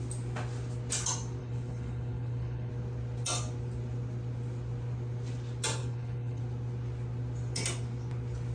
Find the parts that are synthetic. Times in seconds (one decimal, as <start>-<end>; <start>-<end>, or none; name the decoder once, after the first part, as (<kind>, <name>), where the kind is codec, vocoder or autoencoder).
1.4-2.7 (codec, HILCodec); 5.8-6.4